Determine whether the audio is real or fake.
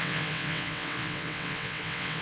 fake